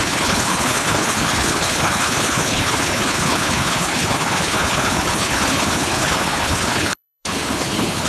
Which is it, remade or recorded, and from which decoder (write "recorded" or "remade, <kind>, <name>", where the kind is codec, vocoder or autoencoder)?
remade, codec, HILCodec